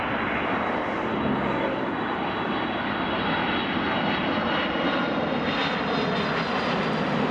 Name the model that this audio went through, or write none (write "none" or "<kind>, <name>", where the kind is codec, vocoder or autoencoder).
none